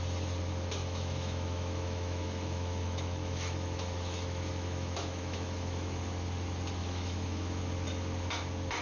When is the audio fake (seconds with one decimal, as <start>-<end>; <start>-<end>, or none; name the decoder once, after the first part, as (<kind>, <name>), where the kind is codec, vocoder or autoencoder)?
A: 0.8-6.0 (autoencoder, DAC-VAE); 6.8-7.6